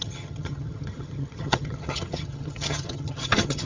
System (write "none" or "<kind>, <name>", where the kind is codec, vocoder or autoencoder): vocoder, HiFi-GAN